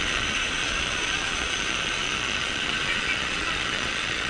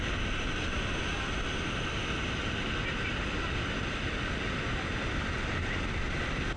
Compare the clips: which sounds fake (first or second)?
first